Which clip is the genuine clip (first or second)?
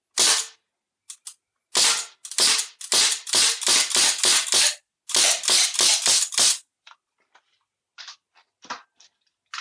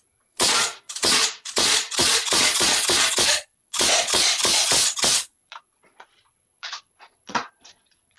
first